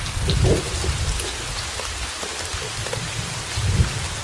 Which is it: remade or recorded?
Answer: recorded